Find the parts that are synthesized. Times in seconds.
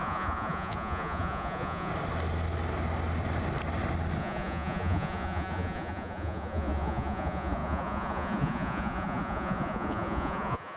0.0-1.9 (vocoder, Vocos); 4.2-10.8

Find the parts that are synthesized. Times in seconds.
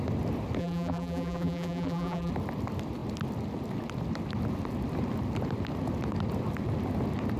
0.6-2.3 (vocoder, BigVGAN v2)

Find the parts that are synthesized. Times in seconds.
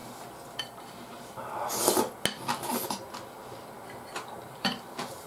0.6-1.1 (vocoder, BigVGAN v2); 4.3-5.3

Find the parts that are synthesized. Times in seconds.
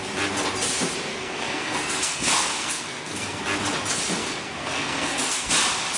1.1-3.4 (codec, SNAC); 4.2-5.5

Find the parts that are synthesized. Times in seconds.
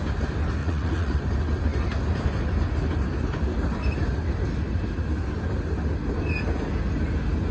0.6-1.2 (vocoder, Vocos)